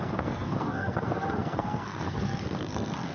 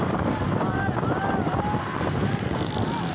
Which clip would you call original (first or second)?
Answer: second